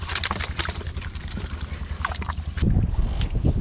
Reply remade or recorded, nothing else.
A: recorded